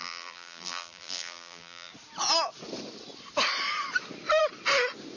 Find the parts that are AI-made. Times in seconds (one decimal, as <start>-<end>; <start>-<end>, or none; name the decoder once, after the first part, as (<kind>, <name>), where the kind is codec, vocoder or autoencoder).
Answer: 0.0-1.9 (vocoder, BigVGAN v2)

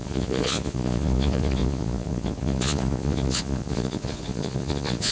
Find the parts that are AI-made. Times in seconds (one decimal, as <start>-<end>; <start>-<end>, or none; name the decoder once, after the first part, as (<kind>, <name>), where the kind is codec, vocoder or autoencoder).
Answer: 0.0-5.1 (vocoder, Vocos)